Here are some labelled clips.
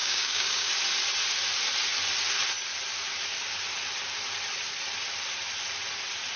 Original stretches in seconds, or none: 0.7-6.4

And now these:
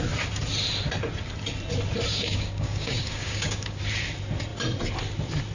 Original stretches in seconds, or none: 0.0-2.1; 3.8-5.5

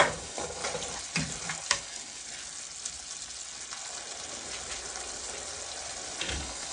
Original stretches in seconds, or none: 0.6-1.7; 2.2-6.2

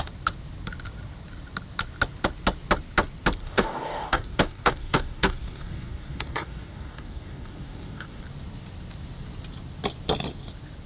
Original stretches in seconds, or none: 0.0-3.4; 8.2-10.9

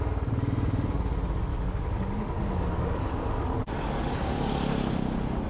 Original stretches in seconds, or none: 0.0-1.5; 4.4-5.5

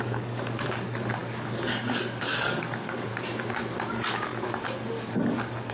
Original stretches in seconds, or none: 3.1-3.9

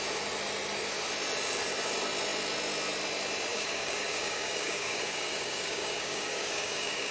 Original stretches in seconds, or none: 0.0-3.5

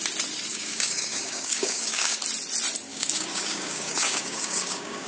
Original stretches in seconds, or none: 0.0-0.5; 2.2-2.9